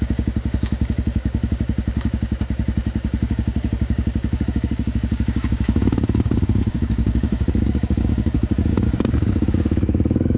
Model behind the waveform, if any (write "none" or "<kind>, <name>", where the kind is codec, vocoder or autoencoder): codec, DAC